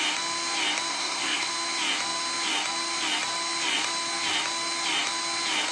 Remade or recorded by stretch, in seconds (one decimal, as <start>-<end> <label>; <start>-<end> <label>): 0.0-0.9 recorded; 0.9-1.5 remade; 1.5-5.7 recorded